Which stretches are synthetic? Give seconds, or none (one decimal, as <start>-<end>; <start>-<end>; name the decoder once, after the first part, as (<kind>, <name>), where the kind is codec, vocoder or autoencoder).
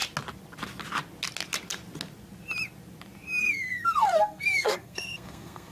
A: 3.4-5.7 (codec, SNAC)